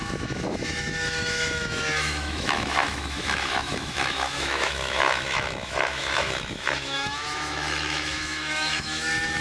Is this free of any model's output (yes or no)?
no